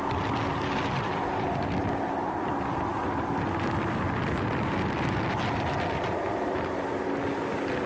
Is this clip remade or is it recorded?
recorded